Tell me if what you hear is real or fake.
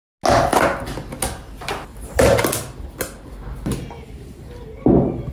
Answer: real